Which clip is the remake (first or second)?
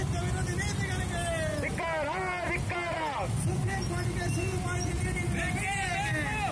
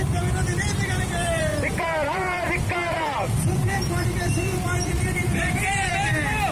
second